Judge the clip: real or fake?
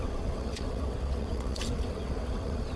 fake